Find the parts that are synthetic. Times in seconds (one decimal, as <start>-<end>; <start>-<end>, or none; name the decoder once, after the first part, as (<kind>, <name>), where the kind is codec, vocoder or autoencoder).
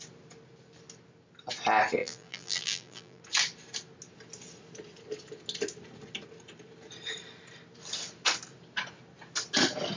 2.0-3.2 (vocoder, BigVGAN v2)